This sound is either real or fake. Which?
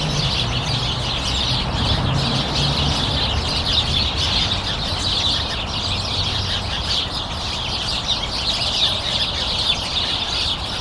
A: real